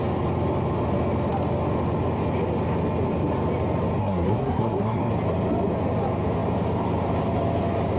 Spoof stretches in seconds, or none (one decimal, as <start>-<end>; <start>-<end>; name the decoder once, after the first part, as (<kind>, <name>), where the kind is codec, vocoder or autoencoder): 4.0-5.1 (codec, SNAC)